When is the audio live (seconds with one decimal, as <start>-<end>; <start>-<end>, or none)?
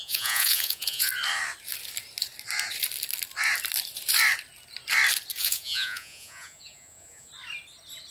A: 1.1-5.4; 7.3-8.1